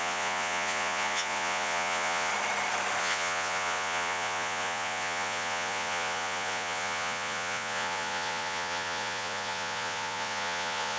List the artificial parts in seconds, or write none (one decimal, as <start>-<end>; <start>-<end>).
0.0-2.3; 3.0-11.0